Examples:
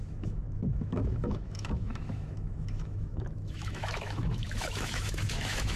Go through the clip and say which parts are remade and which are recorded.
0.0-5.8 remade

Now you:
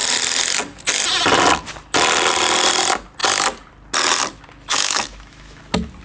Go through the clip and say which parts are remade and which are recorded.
0.0-4.7 recorded; 4.7-5.6 remade; 5.6-6.0 recorded

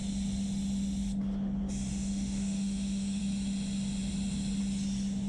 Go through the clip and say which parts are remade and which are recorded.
0.0-1.9 recorded; 1.9-3.2 remade; 3.2-5.3 recorded